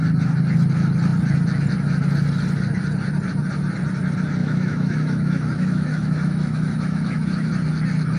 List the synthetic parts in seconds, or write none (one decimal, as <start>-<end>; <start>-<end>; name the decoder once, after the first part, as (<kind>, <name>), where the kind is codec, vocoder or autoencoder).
4.4-7.5 (autoencoder, DAC-VAE)